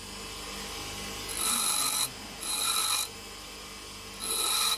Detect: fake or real real